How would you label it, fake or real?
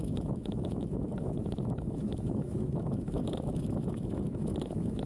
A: fake